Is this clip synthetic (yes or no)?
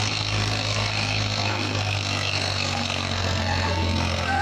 yes